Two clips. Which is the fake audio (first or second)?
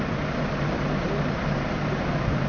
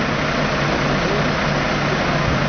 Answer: first